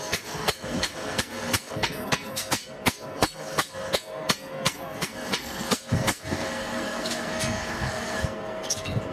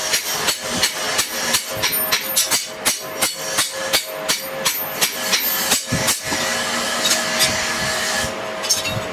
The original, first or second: second